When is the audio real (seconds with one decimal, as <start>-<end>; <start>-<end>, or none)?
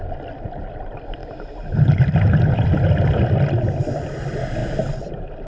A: 0.0-4.6